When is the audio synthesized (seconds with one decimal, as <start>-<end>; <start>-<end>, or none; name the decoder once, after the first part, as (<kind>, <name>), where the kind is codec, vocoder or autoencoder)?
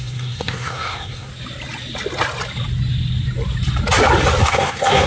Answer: 0.0-1.3 (codec, SNAC); 4.4-5.1